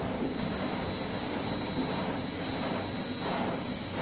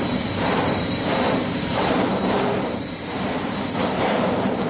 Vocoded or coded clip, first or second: second